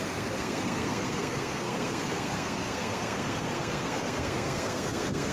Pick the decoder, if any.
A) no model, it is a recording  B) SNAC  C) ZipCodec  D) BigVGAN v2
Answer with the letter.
B